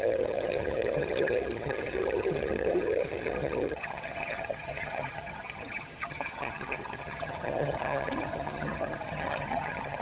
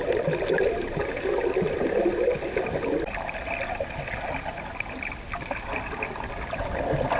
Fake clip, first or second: first